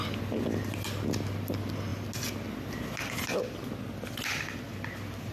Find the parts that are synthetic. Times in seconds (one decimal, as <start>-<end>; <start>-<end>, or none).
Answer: none